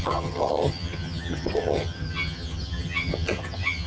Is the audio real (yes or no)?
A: no